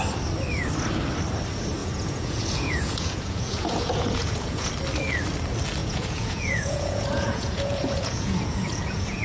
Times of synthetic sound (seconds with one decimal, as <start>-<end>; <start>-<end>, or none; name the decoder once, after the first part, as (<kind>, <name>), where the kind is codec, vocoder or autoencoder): 1.8-4.7 (vocoder, Vocos); 5.8-9.2